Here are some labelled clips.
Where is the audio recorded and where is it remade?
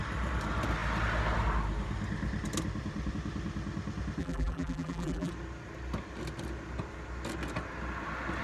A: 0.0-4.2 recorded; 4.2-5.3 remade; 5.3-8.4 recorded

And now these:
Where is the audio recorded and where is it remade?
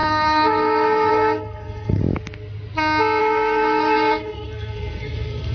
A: 0.0-2.0 remade; 2.0-3.2 recorded; 3.2-5.5 remade